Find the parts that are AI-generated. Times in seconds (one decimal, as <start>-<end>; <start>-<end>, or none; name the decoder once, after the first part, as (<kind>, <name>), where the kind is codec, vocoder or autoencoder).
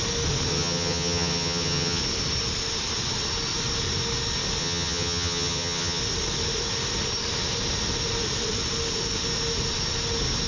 0.5-2.0 (vocoder, HiFi-GAN); 4.6-6.0